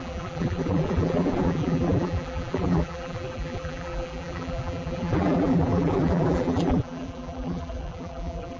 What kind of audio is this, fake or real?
fake